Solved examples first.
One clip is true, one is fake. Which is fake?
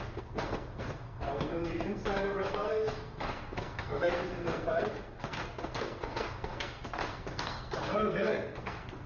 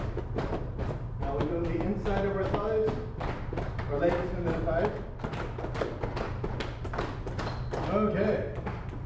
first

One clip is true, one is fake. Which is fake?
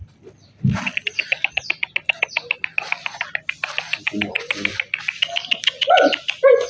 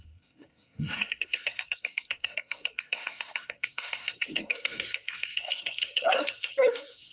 second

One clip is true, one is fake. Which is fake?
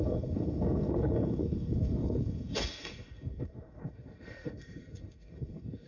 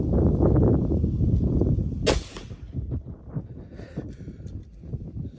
first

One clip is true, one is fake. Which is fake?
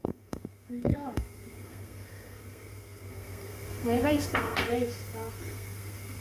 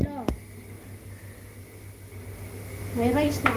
first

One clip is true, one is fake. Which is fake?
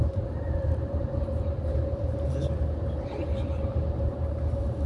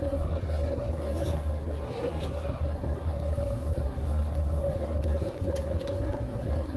second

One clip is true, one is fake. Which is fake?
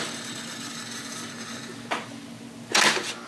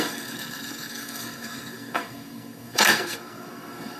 second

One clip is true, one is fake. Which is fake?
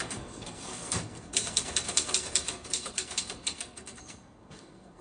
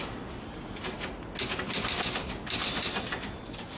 first